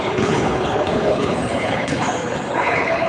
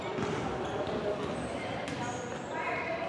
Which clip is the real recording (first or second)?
second